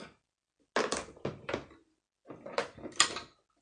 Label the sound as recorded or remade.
recorded